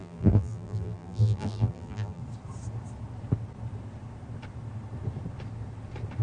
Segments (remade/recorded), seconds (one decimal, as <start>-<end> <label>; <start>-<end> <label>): 0.0-2.2 remade; 2.2-6.2 recorded